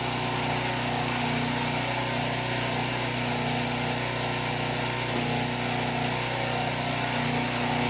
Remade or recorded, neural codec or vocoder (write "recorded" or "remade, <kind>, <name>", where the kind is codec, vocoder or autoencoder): recorded